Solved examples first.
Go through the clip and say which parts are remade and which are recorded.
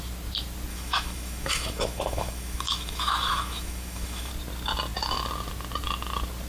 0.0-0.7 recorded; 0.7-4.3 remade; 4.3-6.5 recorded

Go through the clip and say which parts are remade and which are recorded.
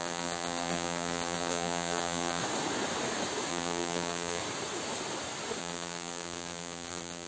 0.0-2.4 remade; 2.4-3.5 recorded; 3.5-4.4 remade; 4.4-5.6 recorded; 5.6-7.3 remade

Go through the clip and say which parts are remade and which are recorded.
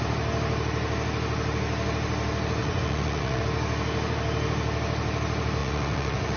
0.0-2.6 recorded; 2.6-3.4 remade; 3.4-5.6 recorded; 5.6-6.4 remade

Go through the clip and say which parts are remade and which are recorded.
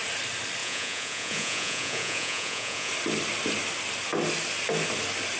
0.0-0.6 recorded; 0.6-2.9 remade; 2.9-5.4 recorded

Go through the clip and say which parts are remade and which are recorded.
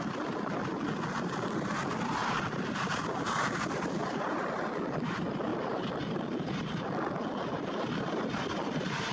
0.0-2.2 remade; 2.2-2.7 recorded; 2.7-4.0 remade; 4.0-4.7 recorded; 4.7-9.1 remade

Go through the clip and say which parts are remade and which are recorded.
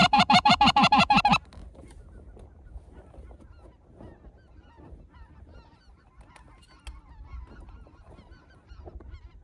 0.0-1.2 remade; 1.2-9.4 recorded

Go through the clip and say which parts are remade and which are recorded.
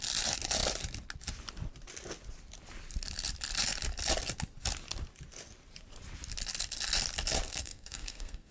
0.0-7.5 recorded; 7.5-8.5 remade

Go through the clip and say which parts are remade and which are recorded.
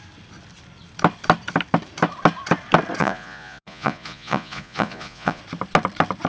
0.0-3.0 recorded; 3.0-5.4 remade; 5.4-6.3 recorded